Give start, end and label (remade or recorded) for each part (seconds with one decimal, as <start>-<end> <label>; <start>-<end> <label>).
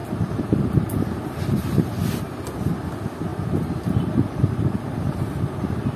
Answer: 0.0-3.3 recorded; 3.3-5.1 remade; 5.1-6.0 recorded